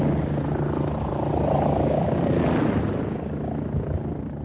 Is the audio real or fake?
real